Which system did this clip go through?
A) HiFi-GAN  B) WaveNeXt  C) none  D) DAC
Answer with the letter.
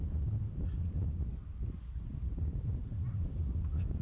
C